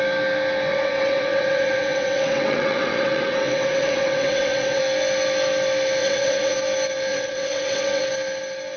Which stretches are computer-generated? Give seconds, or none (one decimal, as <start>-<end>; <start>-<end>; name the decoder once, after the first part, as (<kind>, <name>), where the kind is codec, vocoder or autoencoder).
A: 0.7-4.8 (vocoder, WaveNeXt); 6.0-6.5; 7.1-8.0